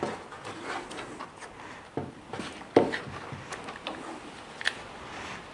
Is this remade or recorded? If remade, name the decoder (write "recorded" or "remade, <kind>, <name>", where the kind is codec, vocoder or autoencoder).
recorded